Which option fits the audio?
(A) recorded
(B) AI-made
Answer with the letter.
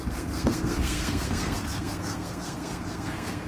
B